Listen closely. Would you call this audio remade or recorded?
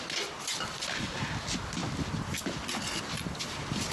recorded